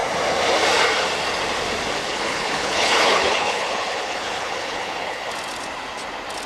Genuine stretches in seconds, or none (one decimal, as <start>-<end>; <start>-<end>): 0.0-2.0; 5.3-6.5